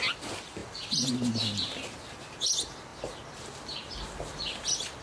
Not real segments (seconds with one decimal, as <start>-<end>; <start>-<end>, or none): none